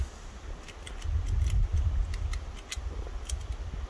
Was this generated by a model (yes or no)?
no